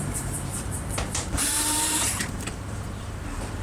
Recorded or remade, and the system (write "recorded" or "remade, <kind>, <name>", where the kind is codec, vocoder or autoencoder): remade, vocoder, BigVGAN v2